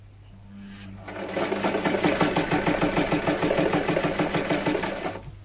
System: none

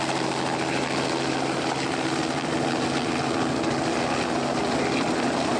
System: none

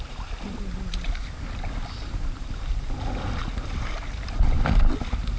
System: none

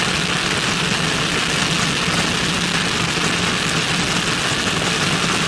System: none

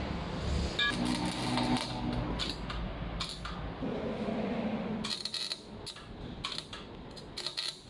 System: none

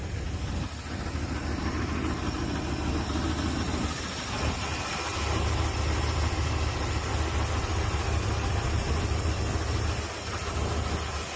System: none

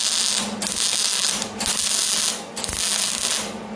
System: none